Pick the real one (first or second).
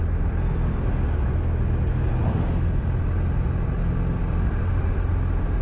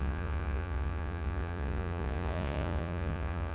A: first